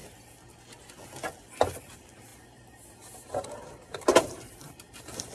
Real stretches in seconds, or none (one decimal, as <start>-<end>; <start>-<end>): 0.0-1.8